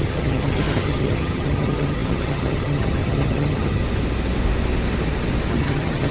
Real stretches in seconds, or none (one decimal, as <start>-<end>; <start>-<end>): 3.8-5.5

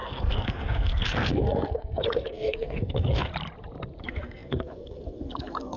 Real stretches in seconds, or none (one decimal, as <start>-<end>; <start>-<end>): 3.3-4.0

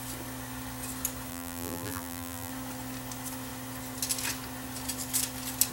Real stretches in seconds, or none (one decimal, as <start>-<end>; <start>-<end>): 0.0-1.3; 2.5-5.7